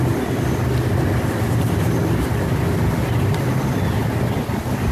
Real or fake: real